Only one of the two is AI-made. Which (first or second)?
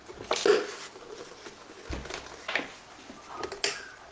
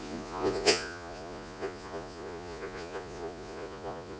second